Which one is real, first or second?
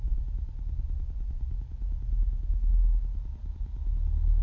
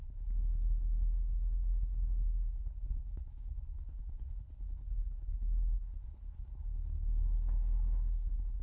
first